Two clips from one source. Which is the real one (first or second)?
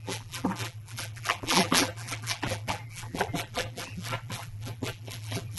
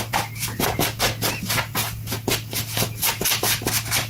second